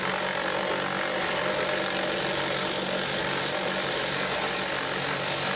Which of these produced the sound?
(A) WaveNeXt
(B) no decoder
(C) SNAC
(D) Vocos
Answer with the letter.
B